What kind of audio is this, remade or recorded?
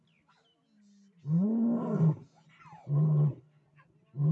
recorded